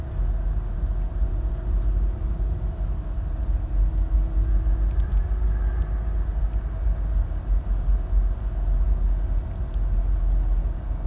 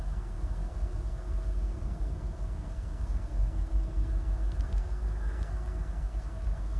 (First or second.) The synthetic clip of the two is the second